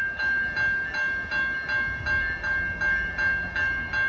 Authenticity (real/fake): real